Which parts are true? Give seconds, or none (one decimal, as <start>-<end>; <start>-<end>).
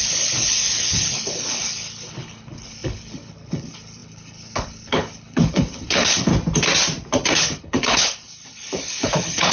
6.3-7.3